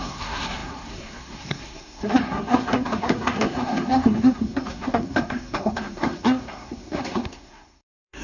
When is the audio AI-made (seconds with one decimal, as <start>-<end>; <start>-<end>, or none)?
0.0-8.2